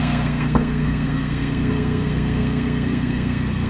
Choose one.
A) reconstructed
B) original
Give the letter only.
A